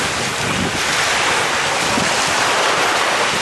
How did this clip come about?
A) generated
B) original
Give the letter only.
B